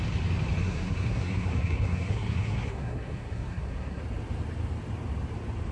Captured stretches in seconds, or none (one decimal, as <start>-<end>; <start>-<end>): 0.0-0.6; 4.0-5.7